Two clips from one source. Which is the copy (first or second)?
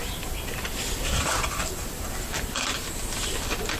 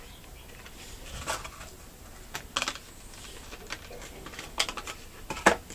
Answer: first